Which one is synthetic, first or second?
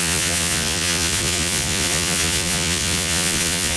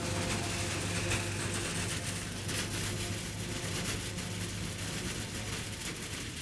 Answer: first